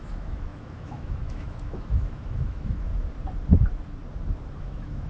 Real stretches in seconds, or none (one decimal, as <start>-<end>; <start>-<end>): 2.9-4.6

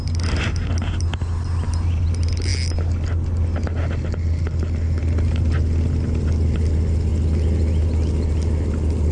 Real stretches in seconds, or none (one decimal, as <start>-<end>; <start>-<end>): 0.0-9.1